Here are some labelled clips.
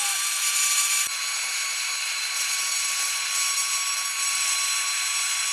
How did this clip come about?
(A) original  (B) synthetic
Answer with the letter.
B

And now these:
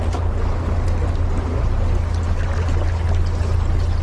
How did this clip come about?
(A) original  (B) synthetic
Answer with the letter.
A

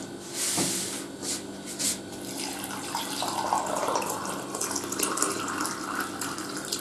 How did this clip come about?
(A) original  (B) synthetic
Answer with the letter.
A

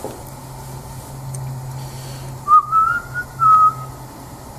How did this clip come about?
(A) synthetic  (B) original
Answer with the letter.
B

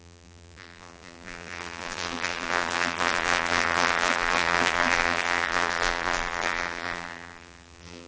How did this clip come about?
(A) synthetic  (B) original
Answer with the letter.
A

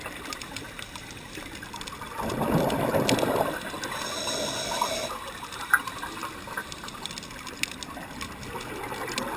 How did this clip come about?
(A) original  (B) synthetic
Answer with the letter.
A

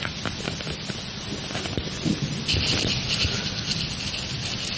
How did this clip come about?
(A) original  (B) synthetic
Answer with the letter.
A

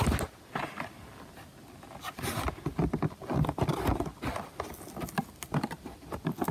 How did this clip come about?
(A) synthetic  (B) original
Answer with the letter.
B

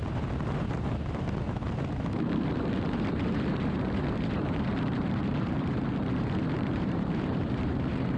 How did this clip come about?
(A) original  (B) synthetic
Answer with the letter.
B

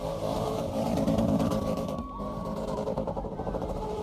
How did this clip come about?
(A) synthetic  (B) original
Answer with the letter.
A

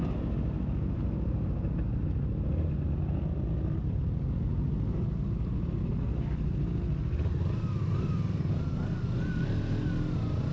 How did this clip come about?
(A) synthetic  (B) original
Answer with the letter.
B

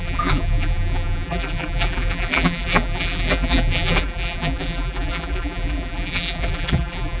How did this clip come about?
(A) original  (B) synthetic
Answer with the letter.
B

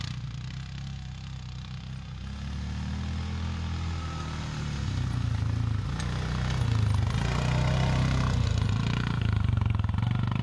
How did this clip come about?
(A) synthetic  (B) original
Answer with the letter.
B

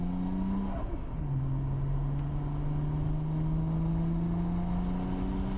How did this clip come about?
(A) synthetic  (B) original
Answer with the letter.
B